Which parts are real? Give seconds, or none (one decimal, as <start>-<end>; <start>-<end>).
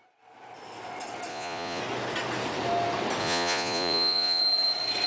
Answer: 0.0-1.3; 1.8-3.2; 4.4-5.1